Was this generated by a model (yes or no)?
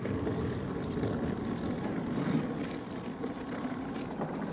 no